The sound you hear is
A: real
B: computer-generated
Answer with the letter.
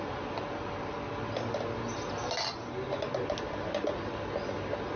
A